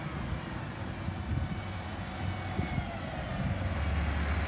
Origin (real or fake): real